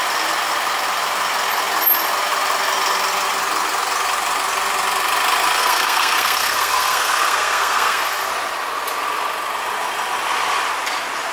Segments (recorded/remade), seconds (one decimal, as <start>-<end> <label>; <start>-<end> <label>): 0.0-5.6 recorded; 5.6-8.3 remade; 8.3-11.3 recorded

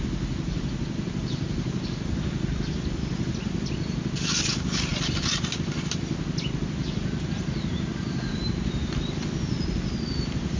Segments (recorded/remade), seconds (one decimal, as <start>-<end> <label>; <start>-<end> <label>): 0.0-10.6 recorded

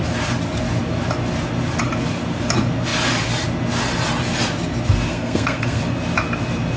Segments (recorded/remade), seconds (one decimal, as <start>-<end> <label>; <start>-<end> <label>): 0.0-5.1 recorded; 5.1-5.8 remade; 5.8-6.8 recorded